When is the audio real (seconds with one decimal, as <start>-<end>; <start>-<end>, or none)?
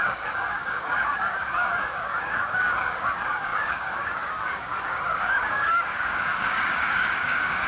none